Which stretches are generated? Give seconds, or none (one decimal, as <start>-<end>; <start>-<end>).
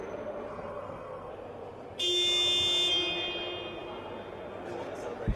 0.5-1.3